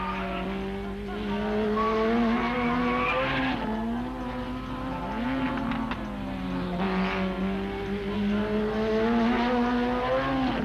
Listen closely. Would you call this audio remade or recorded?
recorded